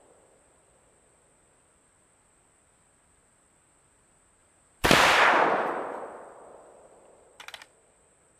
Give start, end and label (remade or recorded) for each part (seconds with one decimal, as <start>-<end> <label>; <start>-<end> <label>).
0.0-4.4 recorded; 4.4-5.2 remade; 5.2-8.4 recorded